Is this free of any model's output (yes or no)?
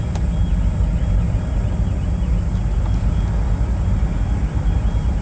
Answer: yes